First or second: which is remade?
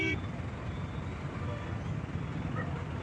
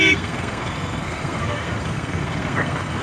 second